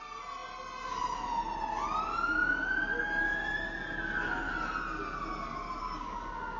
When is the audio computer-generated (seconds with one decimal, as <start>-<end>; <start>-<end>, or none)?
5.8-6.6